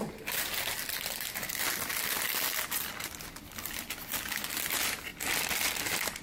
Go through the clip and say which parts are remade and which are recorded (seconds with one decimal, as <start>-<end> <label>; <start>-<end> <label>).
0.0-1.9 recorded; 1.9-2.9 remade; 2.9-6.2 recorded